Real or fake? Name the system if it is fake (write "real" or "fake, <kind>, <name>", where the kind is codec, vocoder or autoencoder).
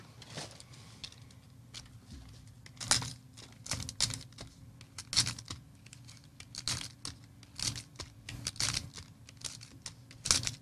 real